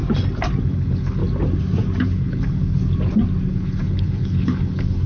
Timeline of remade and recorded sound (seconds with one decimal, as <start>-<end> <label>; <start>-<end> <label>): 0.0-0.6 recorded; 0.6-1.2 remade; 1.2-2.0 recorded; 2.0-2.8 remade; 2.8-3.5 recorded; 3.5-5.1 remade